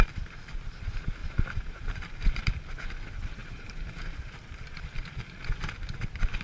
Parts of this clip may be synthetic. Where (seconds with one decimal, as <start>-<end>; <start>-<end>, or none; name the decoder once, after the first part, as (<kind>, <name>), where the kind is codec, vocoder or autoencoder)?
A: 1.2-2.9 (vocoder, BigVGAN v2); 3.4-5.4